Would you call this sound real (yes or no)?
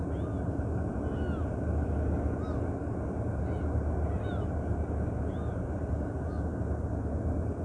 yes